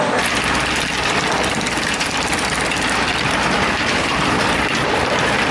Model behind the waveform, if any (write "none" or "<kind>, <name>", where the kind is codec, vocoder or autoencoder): vocoder, BigVGAN v2